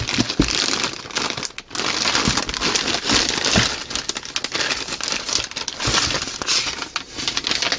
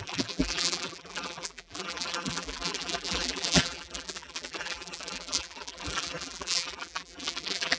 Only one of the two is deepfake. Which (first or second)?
second